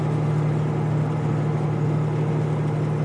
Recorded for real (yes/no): yes